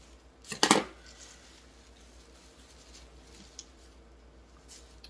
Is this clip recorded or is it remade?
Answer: recorded